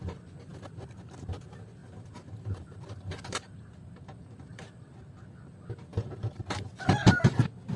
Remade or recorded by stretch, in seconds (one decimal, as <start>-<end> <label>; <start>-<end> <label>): 0.0-1.8 recorded; 1.8-5.1 remade; 5.1-5.9 recorded; 5.9-6.7 remade; 6.7-7.8 recorded